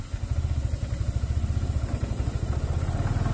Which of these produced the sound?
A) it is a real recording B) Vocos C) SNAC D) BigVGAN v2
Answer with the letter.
A